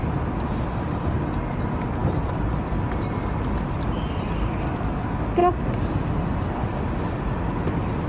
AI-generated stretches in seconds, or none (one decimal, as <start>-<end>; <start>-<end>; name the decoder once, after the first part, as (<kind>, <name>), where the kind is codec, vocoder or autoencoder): none